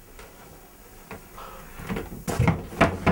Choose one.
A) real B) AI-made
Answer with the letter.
A